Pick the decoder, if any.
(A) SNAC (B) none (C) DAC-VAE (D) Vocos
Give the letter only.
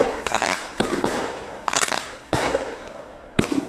A